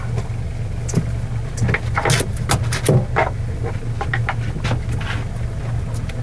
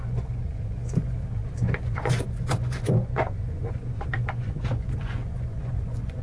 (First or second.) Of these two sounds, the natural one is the first